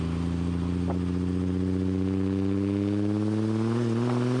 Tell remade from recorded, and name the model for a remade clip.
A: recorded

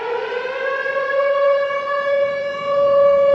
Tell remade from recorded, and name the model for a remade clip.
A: remade, vocoder, Vocos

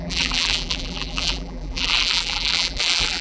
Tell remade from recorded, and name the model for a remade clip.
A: remade, vocoder, BigVGAN v2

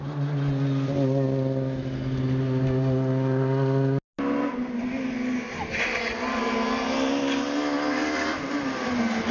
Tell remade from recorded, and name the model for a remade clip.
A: recorded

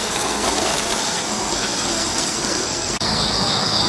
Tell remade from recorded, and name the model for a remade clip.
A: remade, codec, SNAC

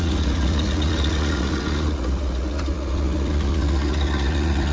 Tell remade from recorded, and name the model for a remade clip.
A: remade, vocoder, Vocos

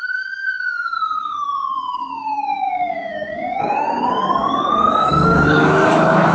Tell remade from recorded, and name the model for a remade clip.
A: remade, codec, DAC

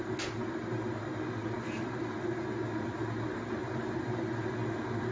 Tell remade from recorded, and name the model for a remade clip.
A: recorded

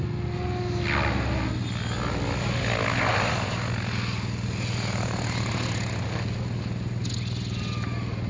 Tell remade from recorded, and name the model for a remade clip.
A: recorded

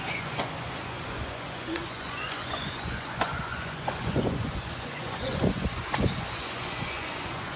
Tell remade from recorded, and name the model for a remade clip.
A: remade, vocoder, Vocos